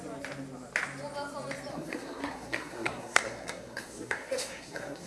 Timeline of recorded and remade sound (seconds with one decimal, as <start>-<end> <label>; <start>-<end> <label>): 0.0-1.7 recorded; 1.7-5.1 remade